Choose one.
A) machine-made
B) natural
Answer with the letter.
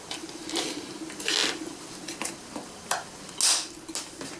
B